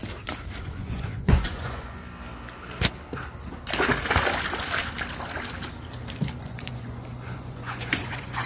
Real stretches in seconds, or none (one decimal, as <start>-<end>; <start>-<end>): 0.0-0.6; 2.0-6.4